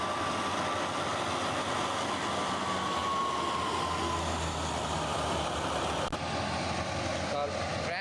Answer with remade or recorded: recorded